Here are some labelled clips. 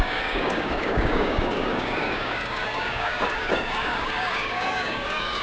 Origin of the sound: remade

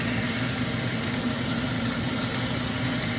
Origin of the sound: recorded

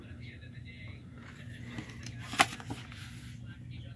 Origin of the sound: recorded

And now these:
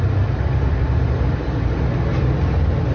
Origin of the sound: recorded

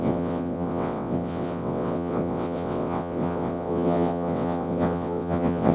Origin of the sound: remade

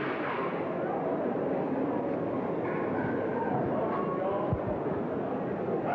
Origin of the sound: recorded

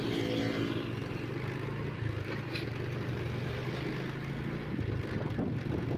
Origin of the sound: recorded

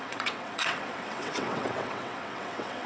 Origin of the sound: remade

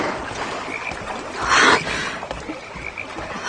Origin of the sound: recorded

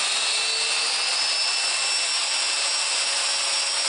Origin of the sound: recorded